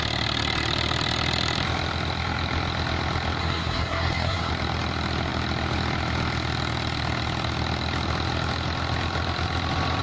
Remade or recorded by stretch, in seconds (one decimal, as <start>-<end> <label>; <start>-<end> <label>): 0.0-3.4 recorded; 3.4-4.5 remade; 4.5-10.0 recorded